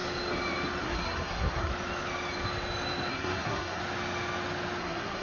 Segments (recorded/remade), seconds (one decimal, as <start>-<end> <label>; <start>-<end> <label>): 0.0-0.8 recorded; 0.8-1.7 remade; 1.7-3.1 recorded; 3.1-3.8 remade; 3.8-4.8 recorded; 4.8-5.2 remade